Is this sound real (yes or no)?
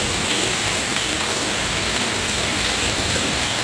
no